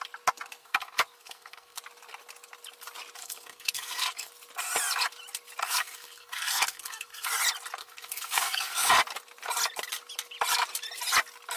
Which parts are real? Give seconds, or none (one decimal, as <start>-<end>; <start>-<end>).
0.0-0.6; 1.8-3.2; 4.3-5.6; 7.3-7.8; 8.9-11.6